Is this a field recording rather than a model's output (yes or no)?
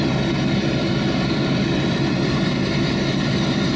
yes